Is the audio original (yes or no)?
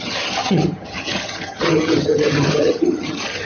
no